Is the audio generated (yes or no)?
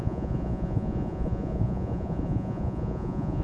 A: yes